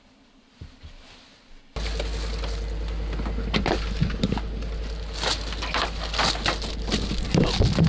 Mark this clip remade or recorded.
recorded